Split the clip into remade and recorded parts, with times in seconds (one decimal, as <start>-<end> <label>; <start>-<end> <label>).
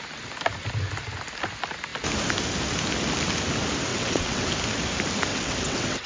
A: 0.0-3.9 recorded; 3.9-4.5 remade; 4.5-5.3 recorded; 5.3-6.1 remade